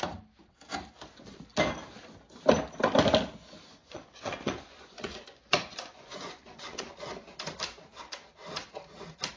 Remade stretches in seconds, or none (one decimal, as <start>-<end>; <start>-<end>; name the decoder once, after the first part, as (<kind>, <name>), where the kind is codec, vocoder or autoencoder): 3.8-6.9 (vocoder, Vocos)